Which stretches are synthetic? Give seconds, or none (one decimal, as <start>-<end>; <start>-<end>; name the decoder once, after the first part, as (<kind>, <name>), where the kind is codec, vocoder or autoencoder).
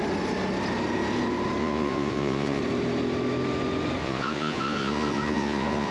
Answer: 1.6-2.6 (vocoder, Vocos); 4.0-5.9